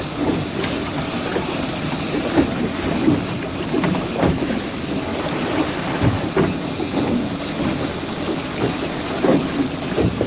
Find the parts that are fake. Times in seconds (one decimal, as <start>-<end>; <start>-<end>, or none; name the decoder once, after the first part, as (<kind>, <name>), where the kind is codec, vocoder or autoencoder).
1.3-4.6 (vocoder, BigVGAN v2); 5.1-6.3